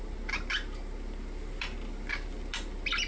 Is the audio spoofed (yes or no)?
no